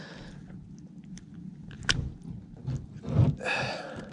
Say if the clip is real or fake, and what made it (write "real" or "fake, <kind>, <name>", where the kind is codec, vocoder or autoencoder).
real